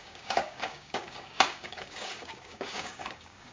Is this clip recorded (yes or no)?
no